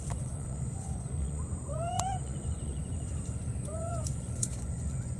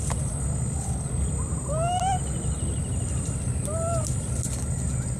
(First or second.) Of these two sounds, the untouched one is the second